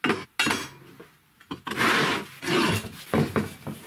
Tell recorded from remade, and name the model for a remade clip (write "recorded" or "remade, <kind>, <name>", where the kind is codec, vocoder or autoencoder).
recorded